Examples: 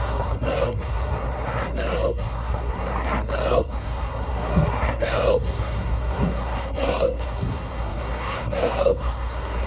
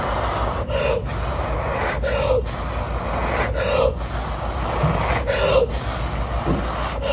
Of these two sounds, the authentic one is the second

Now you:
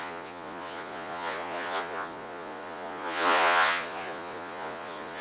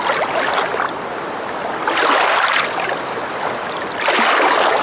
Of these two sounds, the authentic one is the second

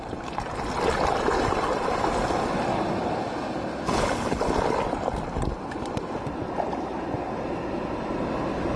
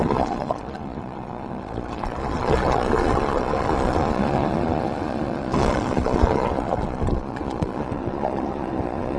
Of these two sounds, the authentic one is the first